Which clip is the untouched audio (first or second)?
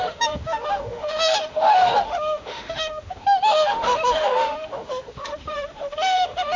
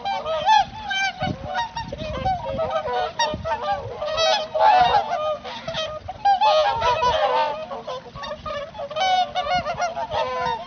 second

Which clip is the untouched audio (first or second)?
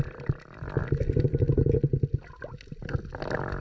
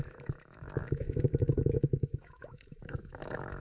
first